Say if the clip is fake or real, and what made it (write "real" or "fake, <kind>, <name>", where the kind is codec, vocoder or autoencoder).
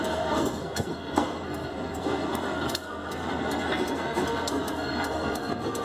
fake, codec, SNAC